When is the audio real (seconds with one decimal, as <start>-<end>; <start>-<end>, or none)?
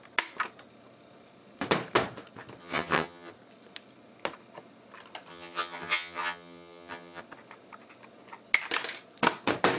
0.0-2.6; 3.3-5.3; 7.2-9.8